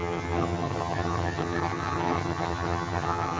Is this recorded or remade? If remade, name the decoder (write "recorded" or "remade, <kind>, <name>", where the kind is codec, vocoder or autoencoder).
remade, vocoder, HiFi-GAN